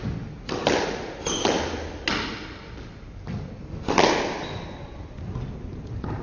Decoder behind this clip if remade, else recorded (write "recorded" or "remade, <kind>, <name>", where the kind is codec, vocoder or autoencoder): recorded